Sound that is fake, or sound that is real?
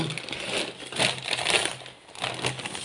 real